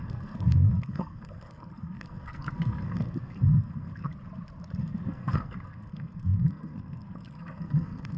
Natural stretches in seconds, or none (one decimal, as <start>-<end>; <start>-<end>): 4.1-4.8